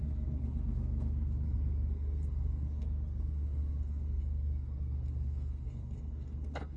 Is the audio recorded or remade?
remade